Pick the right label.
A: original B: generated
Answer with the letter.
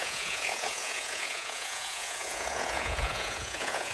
B